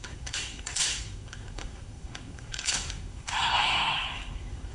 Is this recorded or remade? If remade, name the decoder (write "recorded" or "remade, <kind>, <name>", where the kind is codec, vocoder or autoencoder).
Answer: remade, codec, SNAC